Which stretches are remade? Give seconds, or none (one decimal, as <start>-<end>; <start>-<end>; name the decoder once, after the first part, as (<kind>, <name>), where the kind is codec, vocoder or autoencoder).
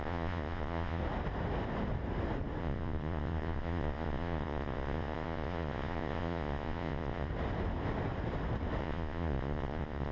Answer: 0.0-1.0 (vocoder, Vocos); 2.6-7.3; 8.8-10.1